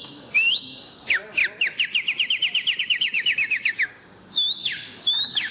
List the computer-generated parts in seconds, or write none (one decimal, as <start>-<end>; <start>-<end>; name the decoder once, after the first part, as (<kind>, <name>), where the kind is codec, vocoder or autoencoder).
0.0-1.4 (codec, DAC); 2.8-5.5